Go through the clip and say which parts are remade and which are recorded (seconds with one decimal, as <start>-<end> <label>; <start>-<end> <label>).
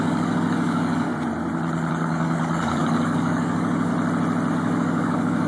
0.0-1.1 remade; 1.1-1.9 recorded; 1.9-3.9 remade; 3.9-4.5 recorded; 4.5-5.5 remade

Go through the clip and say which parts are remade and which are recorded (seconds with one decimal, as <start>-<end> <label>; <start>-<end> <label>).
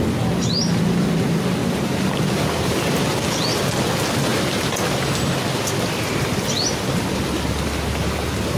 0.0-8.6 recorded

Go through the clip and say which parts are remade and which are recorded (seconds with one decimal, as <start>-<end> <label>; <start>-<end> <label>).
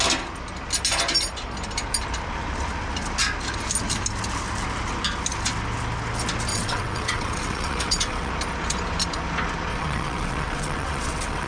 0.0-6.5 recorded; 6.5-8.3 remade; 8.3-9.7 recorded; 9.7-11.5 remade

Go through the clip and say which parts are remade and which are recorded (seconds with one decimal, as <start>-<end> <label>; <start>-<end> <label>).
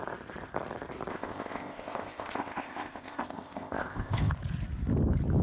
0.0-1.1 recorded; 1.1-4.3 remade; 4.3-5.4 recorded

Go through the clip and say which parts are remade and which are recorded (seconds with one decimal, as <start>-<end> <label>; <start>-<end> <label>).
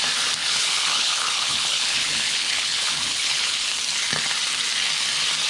0.0-0.4 recorded; 0.4-3.7 remade; 3.7-5.5 recorded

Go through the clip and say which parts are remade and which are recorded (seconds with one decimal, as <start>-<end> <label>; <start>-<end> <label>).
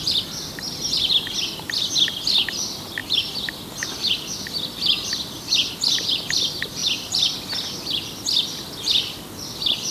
0.0-9.9 recorded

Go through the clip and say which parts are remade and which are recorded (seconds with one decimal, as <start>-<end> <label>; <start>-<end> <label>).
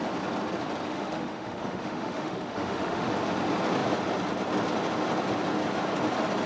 0.0-0.9 recorded; 0.9-3.1 remade; 3.1-6.5 recorded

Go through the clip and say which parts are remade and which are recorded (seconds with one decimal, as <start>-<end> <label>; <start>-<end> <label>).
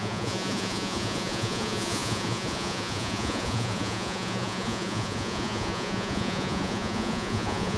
0.0-7.8 remade